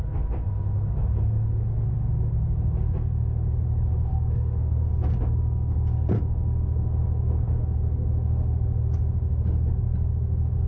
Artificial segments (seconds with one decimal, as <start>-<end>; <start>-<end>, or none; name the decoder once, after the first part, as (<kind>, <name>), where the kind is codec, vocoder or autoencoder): 4.1-4.9 (codec, SNAC); 7.0-7.6